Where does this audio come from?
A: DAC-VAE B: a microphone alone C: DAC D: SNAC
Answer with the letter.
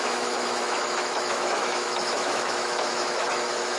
A